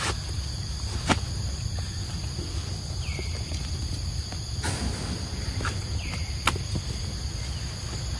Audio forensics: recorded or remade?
recorded